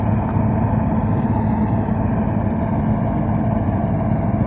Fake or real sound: real